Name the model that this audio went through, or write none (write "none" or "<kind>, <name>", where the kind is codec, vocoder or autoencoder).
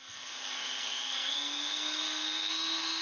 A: codec, SNAC